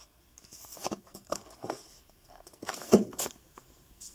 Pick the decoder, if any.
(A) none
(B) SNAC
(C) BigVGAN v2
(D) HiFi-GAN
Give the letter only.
B